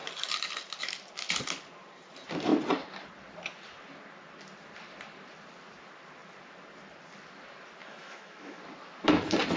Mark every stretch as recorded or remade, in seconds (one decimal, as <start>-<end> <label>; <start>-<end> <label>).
0.0-7.8 recorded; 7.8-8.6 remade; 8.6-9.6 recorded